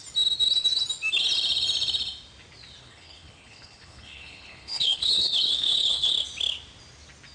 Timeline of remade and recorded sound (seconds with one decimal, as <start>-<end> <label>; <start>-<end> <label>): 0.0-2.8 recorded; 2.8-6.1 remade; 6.1-7.3 recorded